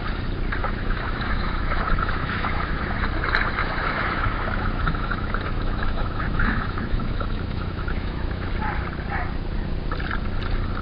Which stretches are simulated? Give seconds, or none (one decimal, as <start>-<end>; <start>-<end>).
0.6-3.0; 3.6-8.5